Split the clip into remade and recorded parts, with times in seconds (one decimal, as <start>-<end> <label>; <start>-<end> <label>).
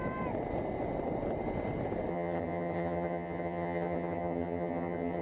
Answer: 0.0-2.1 recorded; 2.1-5.2 remade